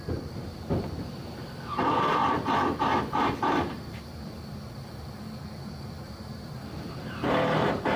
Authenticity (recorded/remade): remade